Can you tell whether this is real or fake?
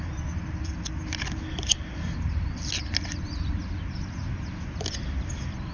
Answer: real